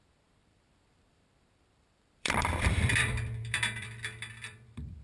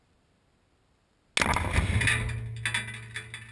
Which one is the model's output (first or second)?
first